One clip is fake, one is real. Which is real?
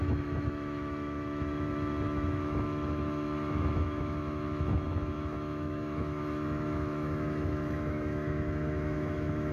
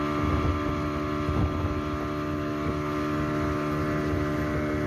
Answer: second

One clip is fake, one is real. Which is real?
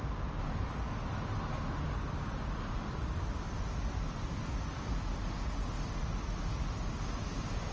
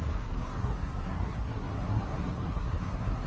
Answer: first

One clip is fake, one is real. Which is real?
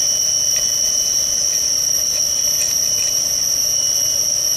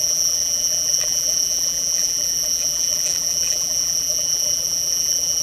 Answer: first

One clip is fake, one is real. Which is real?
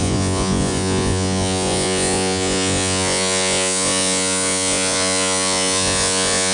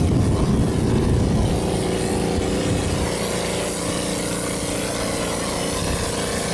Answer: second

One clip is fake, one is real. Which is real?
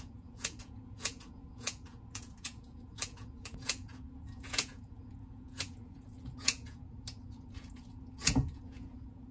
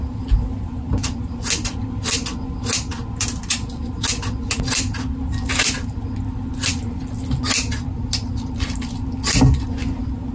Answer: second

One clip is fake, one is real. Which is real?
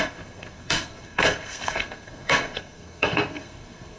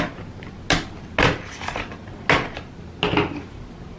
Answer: second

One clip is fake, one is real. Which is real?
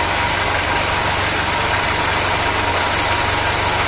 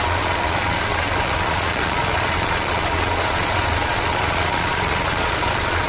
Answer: first